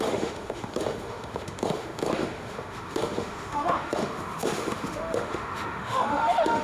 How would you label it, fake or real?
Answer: fake